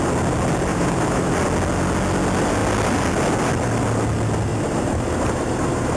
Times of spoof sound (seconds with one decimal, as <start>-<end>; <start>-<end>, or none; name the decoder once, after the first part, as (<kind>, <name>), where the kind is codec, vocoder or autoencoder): 0.7-1.3 (vocoder, BigVGAN v2); 4.5-6.0